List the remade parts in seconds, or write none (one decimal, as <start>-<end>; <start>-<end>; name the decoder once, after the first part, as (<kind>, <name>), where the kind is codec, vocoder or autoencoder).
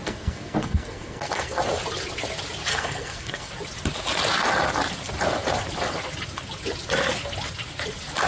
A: 0.0-1.6 (codec, SNAC); 2.7-3.5